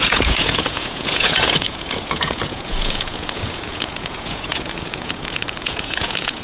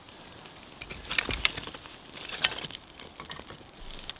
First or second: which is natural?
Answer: second